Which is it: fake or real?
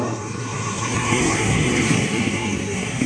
fake